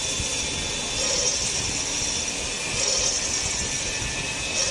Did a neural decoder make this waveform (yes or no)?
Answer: no